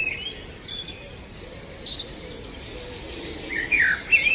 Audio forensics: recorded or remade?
recorded